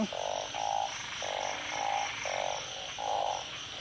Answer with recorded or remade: recorded